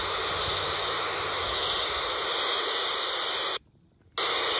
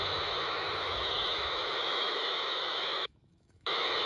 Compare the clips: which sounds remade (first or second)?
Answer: second